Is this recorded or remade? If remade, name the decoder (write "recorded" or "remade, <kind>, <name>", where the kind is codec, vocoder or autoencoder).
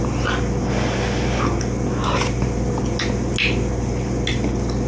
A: recorded